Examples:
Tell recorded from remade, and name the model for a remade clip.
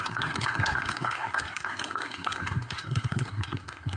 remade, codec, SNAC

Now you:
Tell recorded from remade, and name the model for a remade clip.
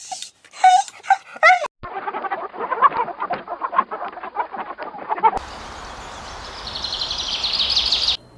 recorded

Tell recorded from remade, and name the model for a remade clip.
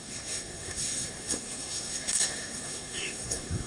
remade, codec, SNAC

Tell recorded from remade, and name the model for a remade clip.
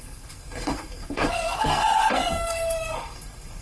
remade, codec, SNAC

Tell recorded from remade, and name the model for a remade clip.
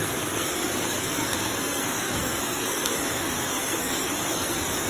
remade, codec, SNAC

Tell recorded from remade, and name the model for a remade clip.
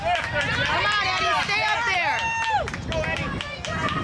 recorded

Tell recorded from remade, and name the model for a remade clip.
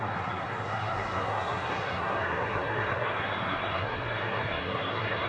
remade, codec, SNAC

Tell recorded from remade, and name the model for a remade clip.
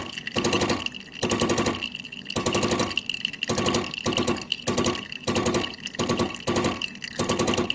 recorded